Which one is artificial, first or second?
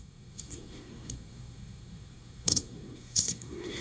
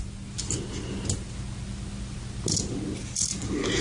first